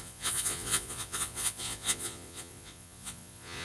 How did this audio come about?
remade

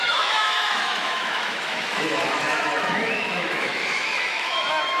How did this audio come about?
remade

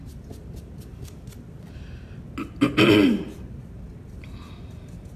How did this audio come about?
recorded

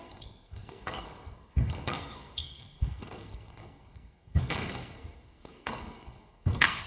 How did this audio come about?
remade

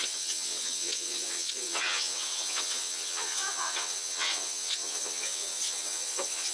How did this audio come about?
remade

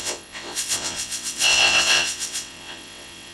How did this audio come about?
remade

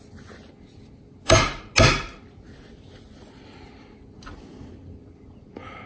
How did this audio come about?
recorded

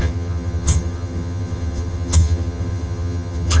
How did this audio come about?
remade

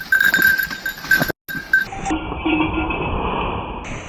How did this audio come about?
recorded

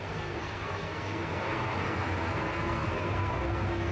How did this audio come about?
remade